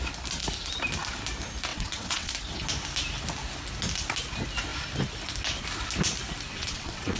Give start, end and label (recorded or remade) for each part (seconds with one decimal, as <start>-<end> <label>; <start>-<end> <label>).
0.0-1.7 recorded; 1.7-2.3 remade; 2.3-6.5 recorded; 6.5-7.2 remade